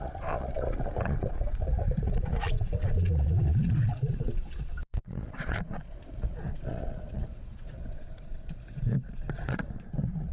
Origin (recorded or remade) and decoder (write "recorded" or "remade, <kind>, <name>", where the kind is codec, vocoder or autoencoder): remade, vocoder, Vocos